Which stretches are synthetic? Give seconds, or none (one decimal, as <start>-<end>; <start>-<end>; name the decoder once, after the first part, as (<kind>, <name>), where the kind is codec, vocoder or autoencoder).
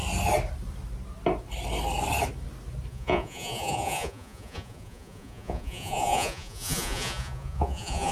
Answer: 2.9-8.1 (vocoder, Vocos)